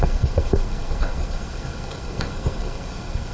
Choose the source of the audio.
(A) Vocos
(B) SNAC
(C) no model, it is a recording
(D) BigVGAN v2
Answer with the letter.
B